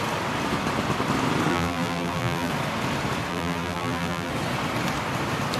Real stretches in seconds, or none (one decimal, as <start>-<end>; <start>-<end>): 0.0-1.5; 2.5-3.3; 4.3-5.6